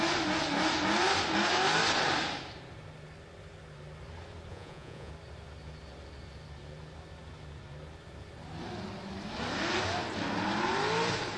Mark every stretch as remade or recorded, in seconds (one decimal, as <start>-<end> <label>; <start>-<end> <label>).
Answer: 0.0-4.5 recorded; 4.5-5.1 remade; 5.1-11.4 recorded